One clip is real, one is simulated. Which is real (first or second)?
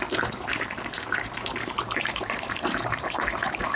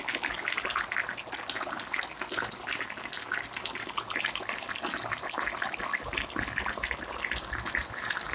second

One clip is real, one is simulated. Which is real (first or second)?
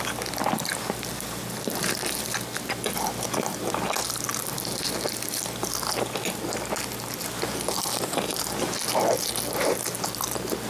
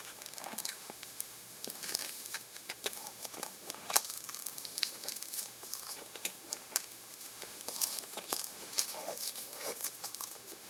first